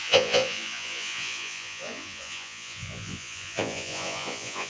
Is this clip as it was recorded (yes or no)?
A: no